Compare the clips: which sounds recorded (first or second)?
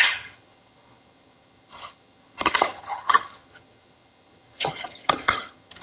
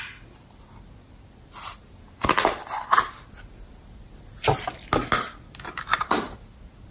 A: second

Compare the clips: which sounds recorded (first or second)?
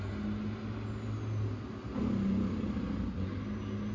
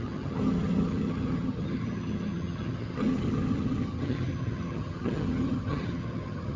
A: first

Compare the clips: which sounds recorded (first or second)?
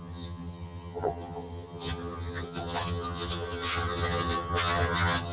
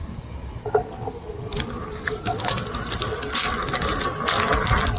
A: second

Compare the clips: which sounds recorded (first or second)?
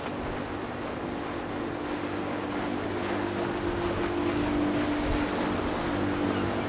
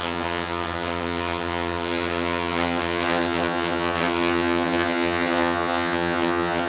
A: first